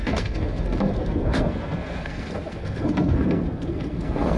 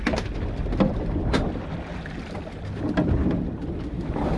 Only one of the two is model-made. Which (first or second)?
first